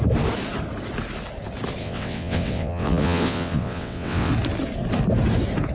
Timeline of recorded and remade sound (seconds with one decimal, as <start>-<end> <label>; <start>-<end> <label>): 0.0-1.8 recorded; 1.8-4.3 remade; 4.3-5.7 recorded